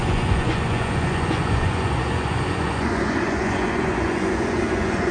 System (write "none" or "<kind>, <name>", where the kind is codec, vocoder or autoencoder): vocoder, Vocos